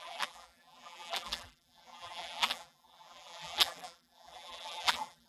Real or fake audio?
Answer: fake